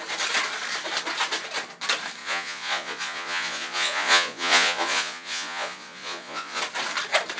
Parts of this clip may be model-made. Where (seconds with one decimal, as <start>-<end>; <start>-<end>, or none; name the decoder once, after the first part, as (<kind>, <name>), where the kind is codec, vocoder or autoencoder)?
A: 2.2-6.6 (vocoder, Vocos)